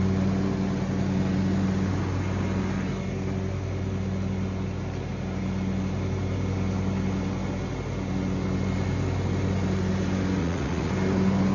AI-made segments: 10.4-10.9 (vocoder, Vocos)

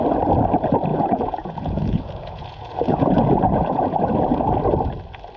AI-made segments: 0.9-4.1 (vocoder, Vocos)

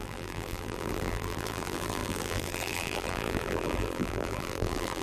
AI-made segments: 0.0-5.0 (vocoder, BigVGAN v2)

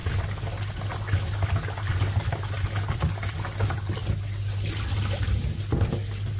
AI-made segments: none

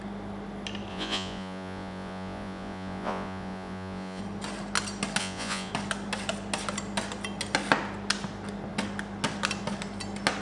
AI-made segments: 0.9-4.2 (vocoder, Vocos); 5.2-5.7

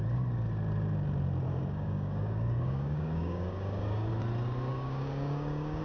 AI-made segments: 1.5-4.1 (codec, DAC); 4.7-5.8

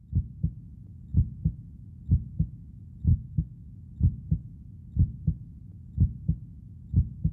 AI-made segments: 3.1-3.7 (codec, SNAC)